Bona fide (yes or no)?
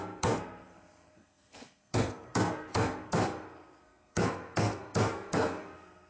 no